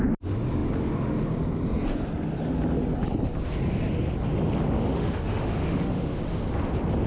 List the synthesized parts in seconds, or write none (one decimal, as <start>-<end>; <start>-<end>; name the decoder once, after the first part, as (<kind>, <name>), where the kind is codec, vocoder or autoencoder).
4.9-6.2 (autoencoder, DAC-VAE)